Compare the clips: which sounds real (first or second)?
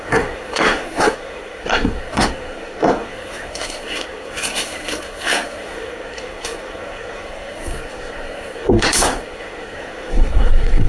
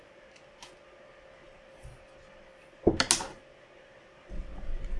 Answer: second